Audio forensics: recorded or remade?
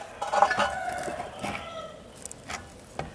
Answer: recorded